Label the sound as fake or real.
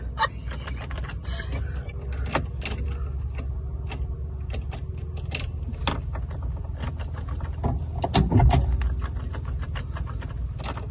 real